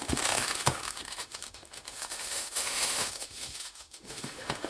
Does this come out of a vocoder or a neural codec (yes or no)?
yes